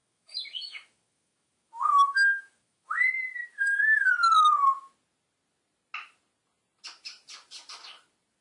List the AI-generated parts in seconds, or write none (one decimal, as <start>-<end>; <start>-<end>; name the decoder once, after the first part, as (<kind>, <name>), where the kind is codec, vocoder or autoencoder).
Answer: 0.0-3.1 (autoencoder, DAC-VAE); 3.5-4.1